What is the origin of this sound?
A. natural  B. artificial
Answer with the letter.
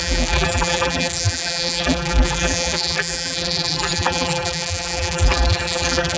B